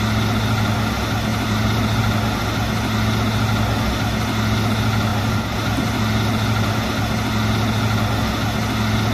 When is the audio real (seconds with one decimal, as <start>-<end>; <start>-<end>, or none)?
0.0-1.3; 2.0-5.1; 6.0-9.1